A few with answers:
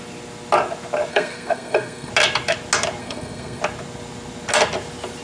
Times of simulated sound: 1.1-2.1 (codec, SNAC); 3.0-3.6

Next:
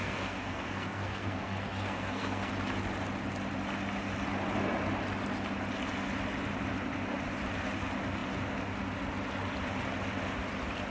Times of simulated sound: 0.0-2.5 (codec, SNAC)

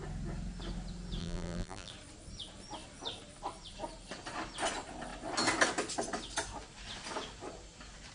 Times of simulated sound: 1.2-1.9 (vocoder, BigVGAN v2)

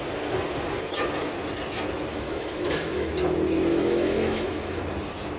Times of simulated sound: 2.1-3.1 (autoencoder, DAC-VAE); 3.7-4.8

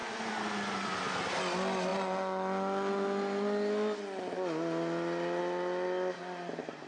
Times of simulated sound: none

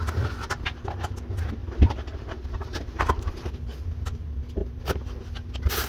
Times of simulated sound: 1.6-3.5 (vocoder, BigVGAN v2); 4.6-5.2